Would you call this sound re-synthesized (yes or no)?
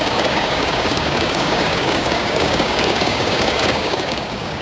yes